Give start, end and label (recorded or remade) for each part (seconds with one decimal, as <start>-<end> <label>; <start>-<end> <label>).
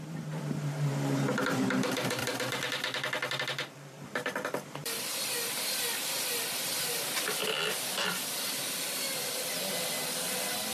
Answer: 0.0-2.2 recorded; 2.2-5.2 remade; 5.2-7.4 recorded; 7.4-8.6 remade; 8.6-10.7 recorded